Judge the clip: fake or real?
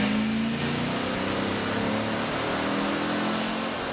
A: real